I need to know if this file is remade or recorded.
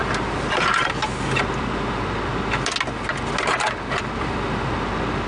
recorded